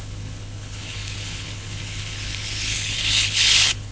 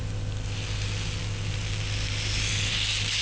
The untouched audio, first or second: second